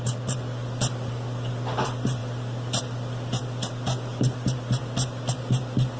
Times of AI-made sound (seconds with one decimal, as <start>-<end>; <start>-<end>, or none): none